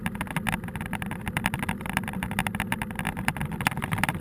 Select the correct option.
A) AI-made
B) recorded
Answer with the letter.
A